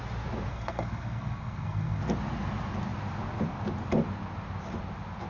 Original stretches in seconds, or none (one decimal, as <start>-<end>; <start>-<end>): 0.0-0.5; 2.0-5.3